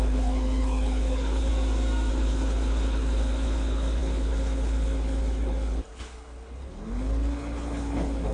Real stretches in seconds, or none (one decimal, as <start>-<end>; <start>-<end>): 1.5-2.1